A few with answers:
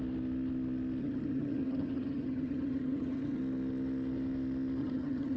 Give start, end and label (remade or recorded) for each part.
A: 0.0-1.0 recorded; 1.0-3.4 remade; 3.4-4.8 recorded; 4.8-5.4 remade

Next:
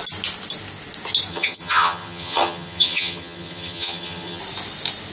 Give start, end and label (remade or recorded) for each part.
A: 0.0-1.3 recorded; 1.3-4.4 remade; 4.4-5.1 recorded

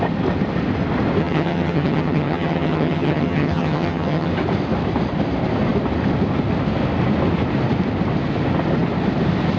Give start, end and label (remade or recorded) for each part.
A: 0.0-1.2 recorded; 1.2-4.3 remade; 4.3-9.6 recorded